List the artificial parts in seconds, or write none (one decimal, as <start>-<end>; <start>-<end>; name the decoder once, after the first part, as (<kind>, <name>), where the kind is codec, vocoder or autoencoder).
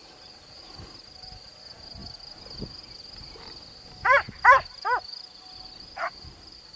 none